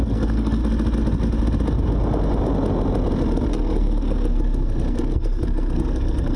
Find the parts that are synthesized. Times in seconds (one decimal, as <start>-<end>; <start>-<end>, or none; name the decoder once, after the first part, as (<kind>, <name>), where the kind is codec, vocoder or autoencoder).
0.0-0.6 (codec, SNAC); 3.5-6.4